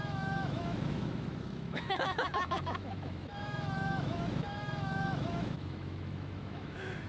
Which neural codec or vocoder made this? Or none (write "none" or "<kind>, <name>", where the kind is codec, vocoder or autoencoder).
autoencoder, DAC-VAE